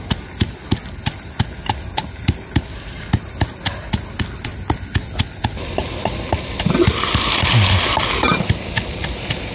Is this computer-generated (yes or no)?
no